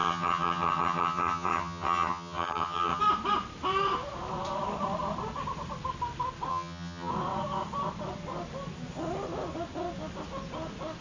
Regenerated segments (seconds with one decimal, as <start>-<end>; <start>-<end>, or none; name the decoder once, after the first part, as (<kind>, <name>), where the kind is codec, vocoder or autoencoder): 0.0-3.0 (vocoder, HiFi-GAN); 6.5-7.1